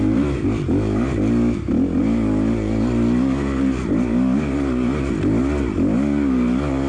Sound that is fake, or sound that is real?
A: real